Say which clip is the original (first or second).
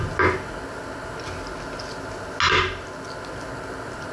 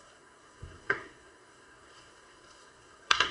first